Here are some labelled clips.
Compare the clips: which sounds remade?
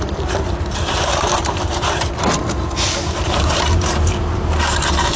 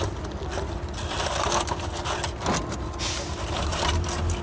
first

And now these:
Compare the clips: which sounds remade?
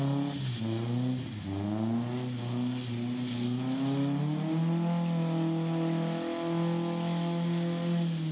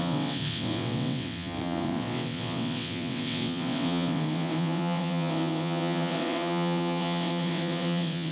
second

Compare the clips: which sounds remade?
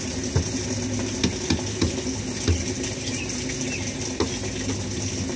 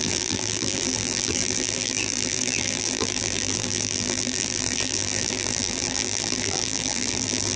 second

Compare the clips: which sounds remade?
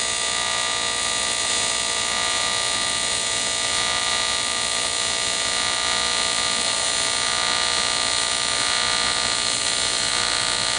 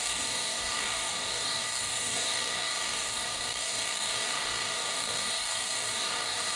second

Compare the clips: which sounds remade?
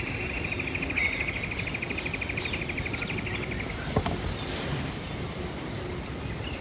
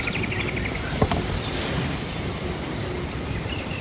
second